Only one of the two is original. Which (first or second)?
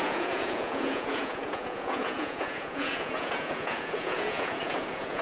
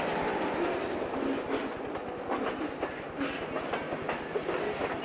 second